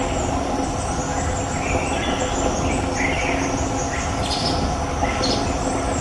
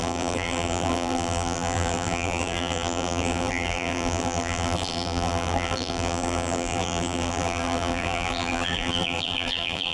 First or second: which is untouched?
first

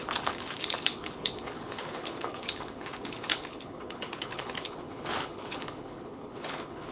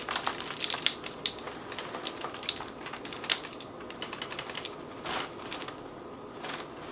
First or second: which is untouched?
second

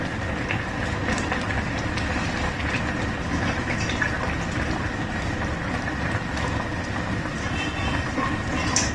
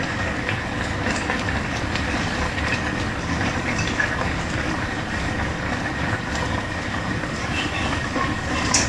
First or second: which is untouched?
first